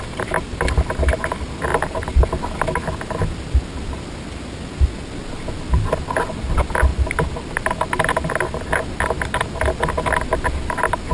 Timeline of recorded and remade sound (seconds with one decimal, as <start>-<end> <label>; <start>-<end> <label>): 0.0-11.1 recorded